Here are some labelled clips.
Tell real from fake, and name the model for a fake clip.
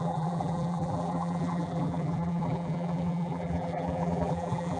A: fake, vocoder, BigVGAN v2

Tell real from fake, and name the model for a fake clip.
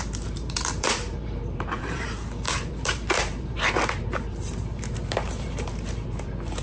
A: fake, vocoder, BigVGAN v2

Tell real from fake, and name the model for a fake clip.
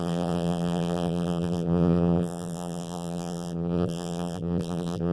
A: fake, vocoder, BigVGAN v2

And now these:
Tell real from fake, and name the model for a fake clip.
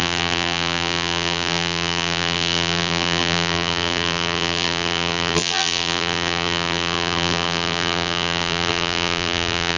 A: fake, vocoder, BigVGAN v2